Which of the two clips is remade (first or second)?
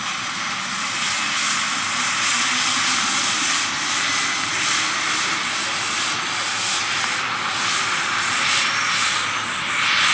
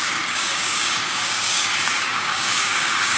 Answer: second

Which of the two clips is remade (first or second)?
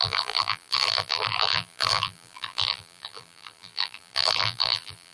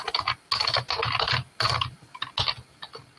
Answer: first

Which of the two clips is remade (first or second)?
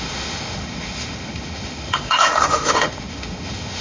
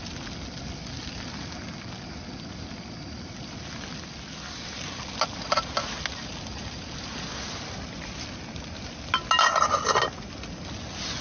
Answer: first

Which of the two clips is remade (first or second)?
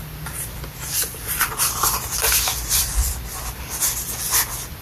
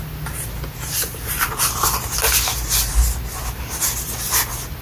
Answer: first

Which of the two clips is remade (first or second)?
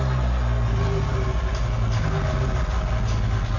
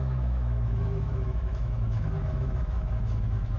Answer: second